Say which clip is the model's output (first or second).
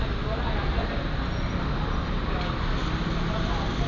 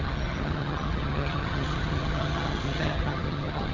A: second